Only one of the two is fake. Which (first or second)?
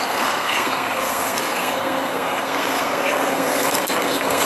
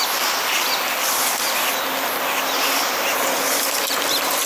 first